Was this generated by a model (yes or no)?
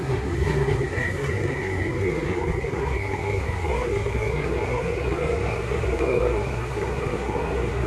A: yes